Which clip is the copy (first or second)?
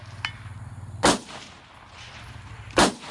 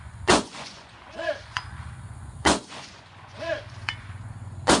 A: second